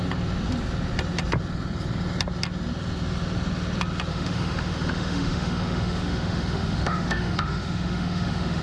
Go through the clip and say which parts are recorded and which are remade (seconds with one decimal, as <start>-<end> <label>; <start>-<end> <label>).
0.0-4.1 recorded; 4.1-8.6 remade